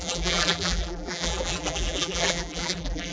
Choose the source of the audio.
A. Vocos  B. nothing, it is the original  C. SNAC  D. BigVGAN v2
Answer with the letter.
D